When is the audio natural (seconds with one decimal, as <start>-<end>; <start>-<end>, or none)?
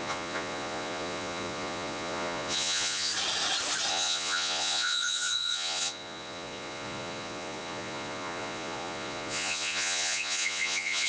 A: 3.1-3.9